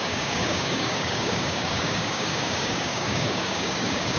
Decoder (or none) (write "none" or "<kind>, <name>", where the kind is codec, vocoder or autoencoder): codec, DAC